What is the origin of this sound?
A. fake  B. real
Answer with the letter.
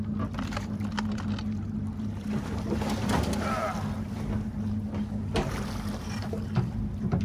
B